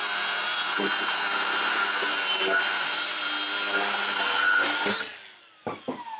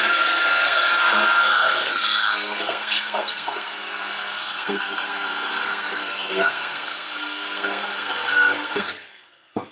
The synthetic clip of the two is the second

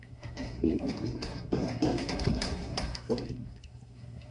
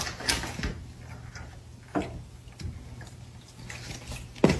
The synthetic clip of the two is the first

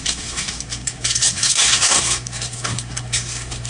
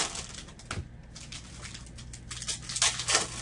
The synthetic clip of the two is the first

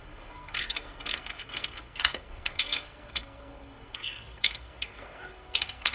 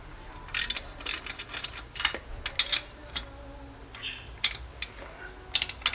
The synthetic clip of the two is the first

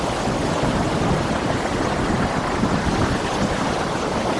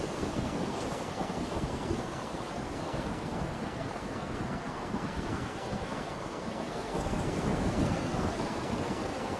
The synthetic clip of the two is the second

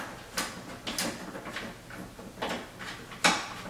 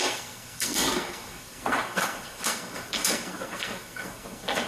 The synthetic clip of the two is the second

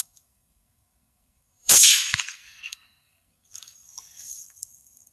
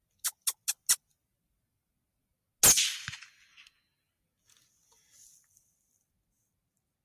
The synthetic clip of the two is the first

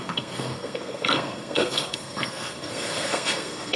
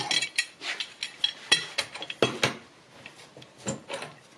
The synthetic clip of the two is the first